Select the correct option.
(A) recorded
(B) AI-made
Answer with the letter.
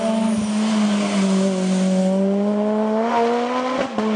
A